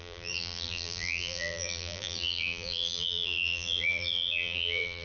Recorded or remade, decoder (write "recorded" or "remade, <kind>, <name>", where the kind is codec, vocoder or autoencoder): remade, vocoder, BigVGAN v2